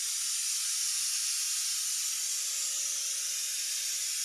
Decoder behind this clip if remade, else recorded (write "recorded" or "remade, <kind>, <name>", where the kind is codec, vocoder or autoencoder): recorded